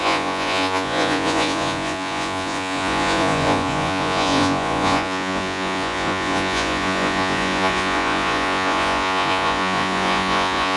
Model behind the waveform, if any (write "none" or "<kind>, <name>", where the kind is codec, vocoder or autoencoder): vocoder, Vocos